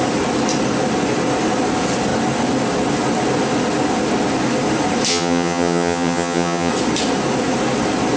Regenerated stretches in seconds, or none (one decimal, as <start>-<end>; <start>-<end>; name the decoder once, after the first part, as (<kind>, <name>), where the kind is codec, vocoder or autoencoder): 5.1-6.7 (vocoder, HiFi-GAN)